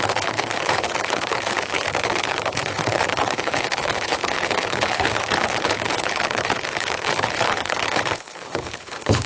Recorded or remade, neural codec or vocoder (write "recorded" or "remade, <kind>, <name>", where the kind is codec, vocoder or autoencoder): remade, codec, HILCodec